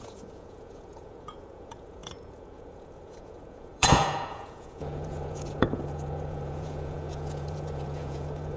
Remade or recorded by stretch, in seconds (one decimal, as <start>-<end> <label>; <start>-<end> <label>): 0.0-8.6 remade